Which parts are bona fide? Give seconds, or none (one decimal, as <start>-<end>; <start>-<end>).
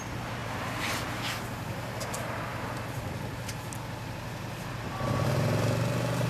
0.0-6.3